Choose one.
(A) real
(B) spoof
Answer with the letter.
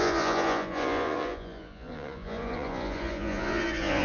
B